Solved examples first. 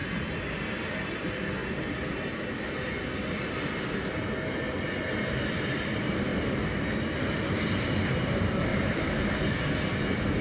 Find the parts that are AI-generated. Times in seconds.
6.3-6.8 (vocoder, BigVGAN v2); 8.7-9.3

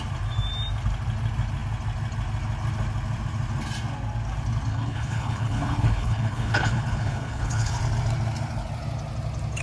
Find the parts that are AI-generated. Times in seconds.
4.7-7.8 (codec, HILCodec)

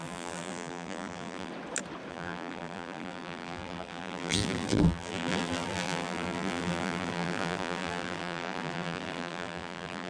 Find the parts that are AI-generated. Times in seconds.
0.0-1.5 (vocoder, BigVGAN v2); 2.1-10.1

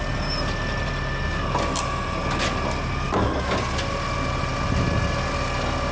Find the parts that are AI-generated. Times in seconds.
none

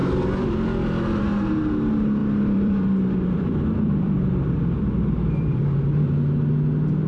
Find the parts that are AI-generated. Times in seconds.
2.2-5.6 (vocoder, BigVGAN v2)

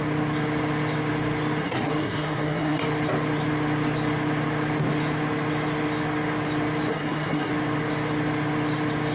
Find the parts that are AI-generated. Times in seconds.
1.6-2.8 (codec, SNAC); 6.9-7.5

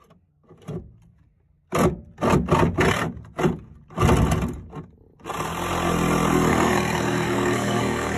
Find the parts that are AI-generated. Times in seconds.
6.5-8.2 (codec, SNAC)